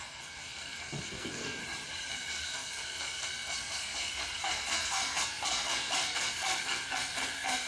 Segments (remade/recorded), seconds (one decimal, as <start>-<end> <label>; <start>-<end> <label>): 0.0-1.6 remade; 1.6-2.1 recorded; 2.1-7.7 remade